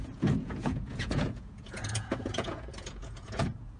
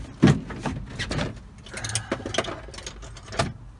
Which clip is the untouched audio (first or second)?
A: second